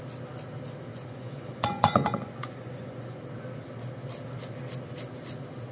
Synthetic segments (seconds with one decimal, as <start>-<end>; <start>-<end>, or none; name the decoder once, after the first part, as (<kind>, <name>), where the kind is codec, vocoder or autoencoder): 0.9-3.2 (vocoder, Vocos)